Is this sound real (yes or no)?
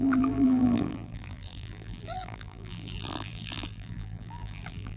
no